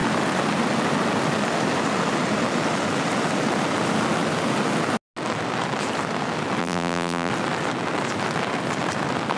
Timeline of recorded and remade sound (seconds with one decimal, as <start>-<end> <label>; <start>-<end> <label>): 0.0-6.6 recorded; 6.6-7.3 remade; 7.3-9.4 recorded